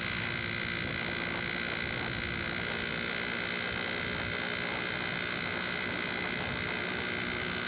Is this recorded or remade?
recorded